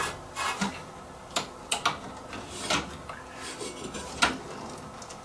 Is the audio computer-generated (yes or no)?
no